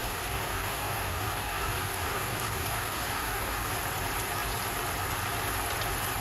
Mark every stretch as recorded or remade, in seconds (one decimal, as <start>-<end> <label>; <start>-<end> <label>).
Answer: 0.0-3.7 remade; 3.7-6.2 recorded